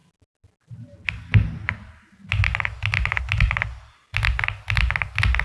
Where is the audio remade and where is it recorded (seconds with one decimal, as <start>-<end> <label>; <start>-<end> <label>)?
0.0-5.4 recorded